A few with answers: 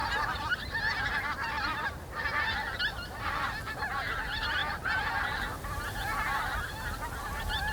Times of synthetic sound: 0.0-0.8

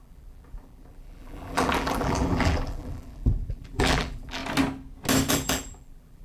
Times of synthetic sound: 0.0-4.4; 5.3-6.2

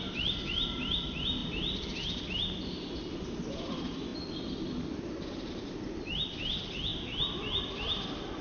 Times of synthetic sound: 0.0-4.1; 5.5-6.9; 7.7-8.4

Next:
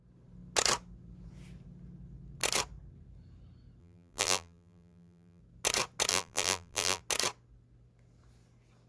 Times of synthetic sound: 3.8-5.4; 6.1-7.0

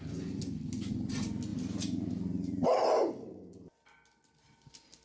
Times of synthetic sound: none

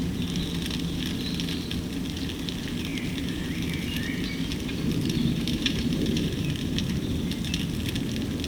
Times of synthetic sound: 2.9-7.5

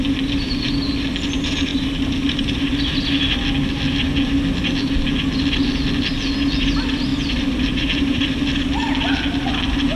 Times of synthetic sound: 7.1-9.2